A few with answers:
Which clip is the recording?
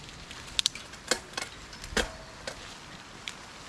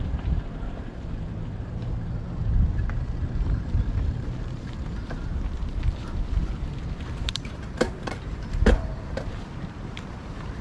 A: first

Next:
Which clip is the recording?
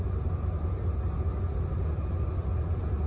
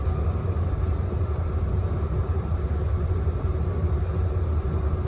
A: first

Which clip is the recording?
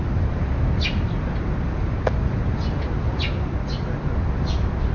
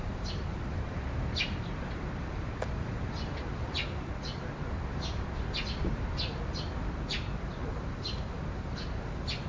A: first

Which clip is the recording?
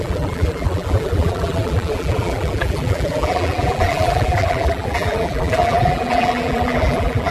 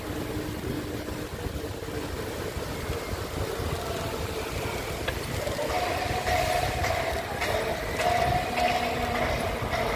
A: second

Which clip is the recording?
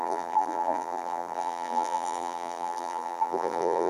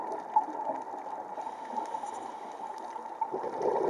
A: second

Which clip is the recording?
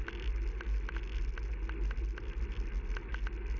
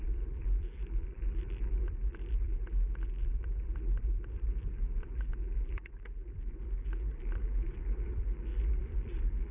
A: first